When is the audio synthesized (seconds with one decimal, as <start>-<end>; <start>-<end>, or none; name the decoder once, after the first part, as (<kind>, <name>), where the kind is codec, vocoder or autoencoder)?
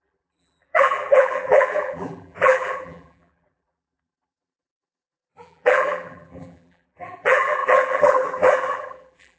0.0-9.4 (vocoder, BigVGAN v2)